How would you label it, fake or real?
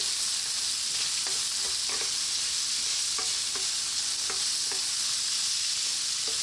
real